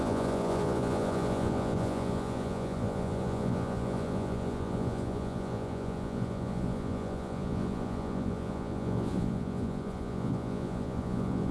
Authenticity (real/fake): fake